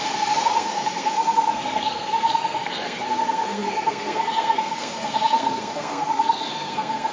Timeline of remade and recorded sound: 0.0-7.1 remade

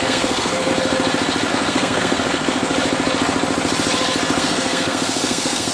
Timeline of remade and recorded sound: 0.0-0.7 remade; 0.7-1.5 recorded; 1.5-2.7 remade; 2.7-4.4 recorded; 4.4-5.7 remade

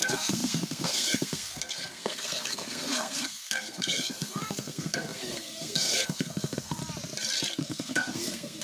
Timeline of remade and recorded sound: 0.0-6.8 remade; 6.8-7.6 recorded; 7.6-8.6 remade

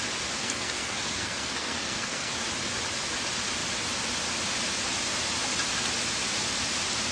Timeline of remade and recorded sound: 0.0-0.4 recorded; 0.4-2.3 remade; 2.3-7.1 recorded